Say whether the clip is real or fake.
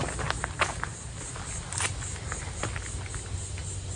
real